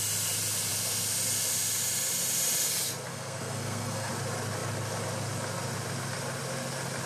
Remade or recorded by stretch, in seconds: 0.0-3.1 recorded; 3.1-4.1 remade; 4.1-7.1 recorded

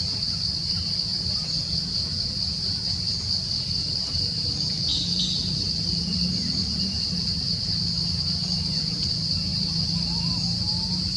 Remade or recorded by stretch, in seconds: 0.0-11.2 recorded

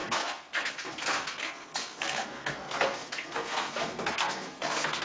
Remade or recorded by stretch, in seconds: 0.0-5.0 remade